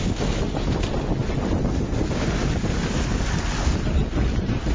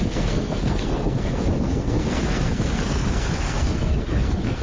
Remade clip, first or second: second